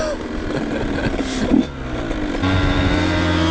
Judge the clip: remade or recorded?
recorded